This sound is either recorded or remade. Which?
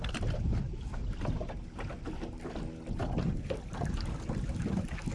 recorded